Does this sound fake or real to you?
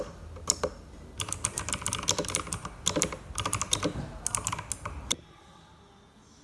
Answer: real